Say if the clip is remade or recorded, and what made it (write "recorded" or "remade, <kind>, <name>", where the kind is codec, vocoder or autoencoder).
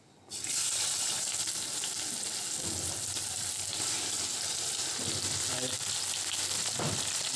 recorded